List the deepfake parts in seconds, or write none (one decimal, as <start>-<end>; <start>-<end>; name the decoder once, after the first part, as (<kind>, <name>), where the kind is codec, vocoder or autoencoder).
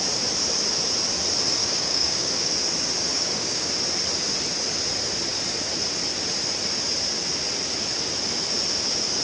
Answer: 1.6-2.5 (codec, DAC); 3.1-3.7